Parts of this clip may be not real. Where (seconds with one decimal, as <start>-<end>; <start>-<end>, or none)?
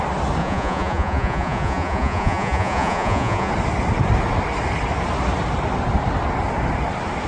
0.4-3.5